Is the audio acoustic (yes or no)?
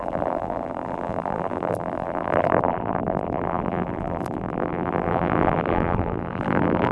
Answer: no